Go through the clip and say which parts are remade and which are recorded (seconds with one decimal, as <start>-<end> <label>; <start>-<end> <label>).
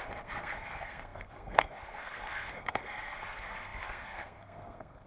0.0-5.1 remade